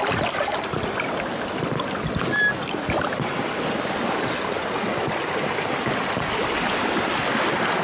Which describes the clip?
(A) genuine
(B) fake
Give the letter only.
A